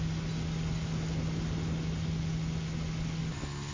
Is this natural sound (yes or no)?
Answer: yes